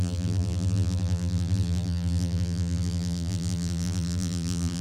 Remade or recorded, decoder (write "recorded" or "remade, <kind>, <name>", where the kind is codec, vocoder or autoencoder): remade, vocoder, BigVGAN v2